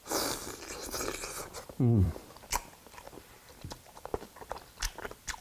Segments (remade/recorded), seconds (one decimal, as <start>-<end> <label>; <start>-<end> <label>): 0.0-2.2 remade; 2.2-5.4 recorded